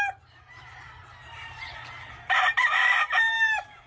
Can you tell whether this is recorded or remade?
remade